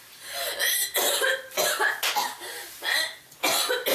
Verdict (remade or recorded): recorded